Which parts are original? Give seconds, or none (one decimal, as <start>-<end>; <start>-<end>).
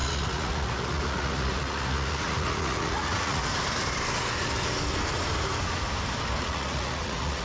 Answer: 3.4-6.4